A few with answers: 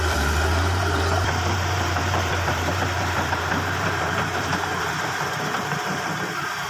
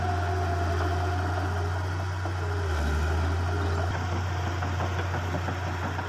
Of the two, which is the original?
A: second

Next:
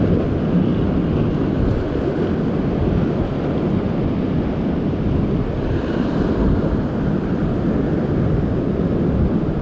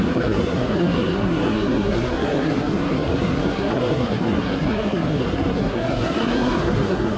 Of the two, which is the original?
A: first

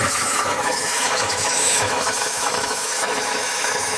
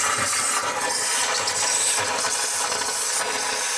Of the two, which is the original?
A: second